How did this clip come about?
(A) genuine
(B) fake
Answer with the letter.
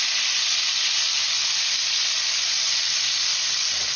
A